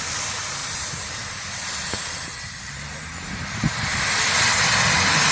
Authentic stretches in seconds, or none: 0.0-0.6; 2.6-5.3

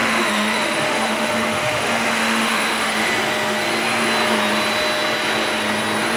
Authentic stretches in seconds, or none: 3.1-6.2

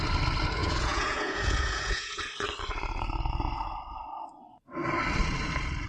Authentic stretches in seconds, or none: 0.0-0.6; 2.2-5.9

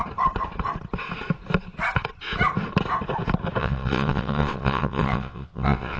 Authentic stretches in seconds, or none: 0.0-3.6

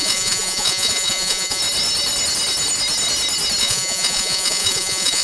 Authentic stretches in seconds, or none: 1.6-3.6

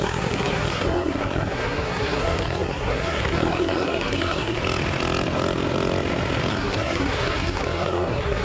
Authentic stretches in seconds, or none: 4.6-6.5